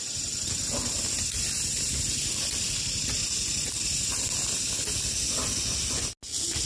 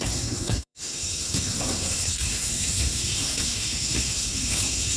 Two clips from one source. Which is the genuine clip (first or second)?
first